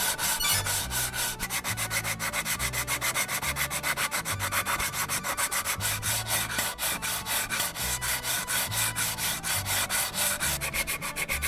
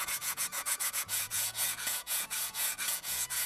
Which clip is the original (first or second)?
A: first